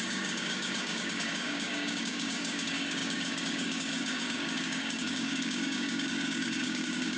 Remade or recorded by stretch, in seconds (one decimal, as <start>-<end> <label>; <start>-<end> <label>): 0.0-7.2 remade